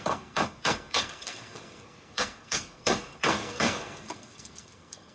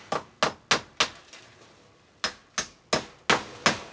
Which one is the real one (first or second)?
second